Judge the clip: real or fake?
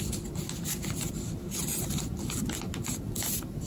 real